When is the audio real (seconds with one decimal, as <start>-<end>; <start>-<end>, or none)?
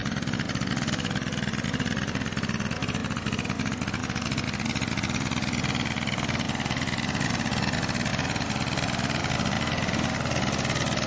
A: 1.4-8.1; 9.2-11.1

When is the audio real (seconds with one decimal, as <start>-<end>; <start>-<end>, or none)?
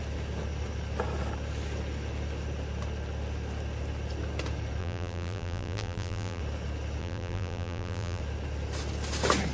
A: 0.0-4.8; 6.4-7.0; 8.2-9.5